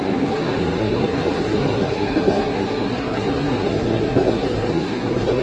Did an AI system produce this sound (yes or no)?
yes